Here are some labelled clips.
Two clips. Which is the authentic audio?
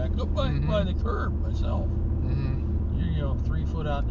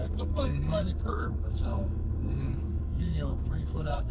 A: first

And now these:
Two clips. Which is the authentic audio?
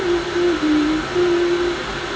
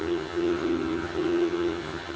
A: first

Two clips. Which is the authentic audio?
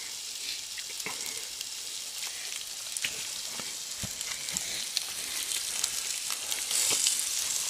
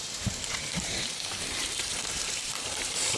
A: first